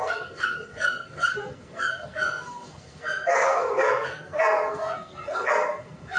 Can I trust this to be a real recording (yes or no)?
no